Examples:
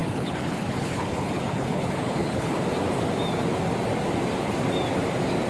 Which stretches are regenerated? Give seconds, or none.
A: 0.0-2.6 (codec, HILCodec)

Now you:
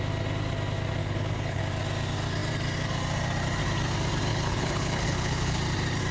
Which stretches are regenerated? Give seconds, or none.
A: 1.0-1.6 (codec, HILCodec); 4.3-5.6

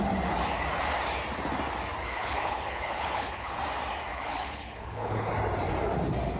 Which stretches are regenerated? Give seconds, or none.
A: 2.0-3.6 (codec, HILCodec); 4.1-5.3

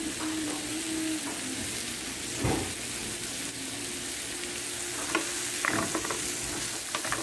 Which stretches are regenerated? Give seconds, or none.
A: none

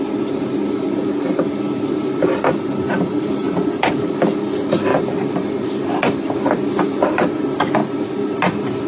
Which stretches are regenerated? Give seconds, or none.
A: none

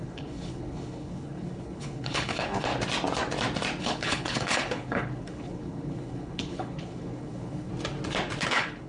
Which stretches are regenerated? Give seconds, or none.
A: 0.0-2.7 (codec, HILCodec); 3.8-7.7; 8.5-8.9